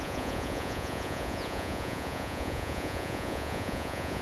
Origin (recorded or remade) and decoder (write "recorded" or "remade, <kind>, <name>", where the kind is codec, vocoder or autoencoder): remade, vocoder, Vocos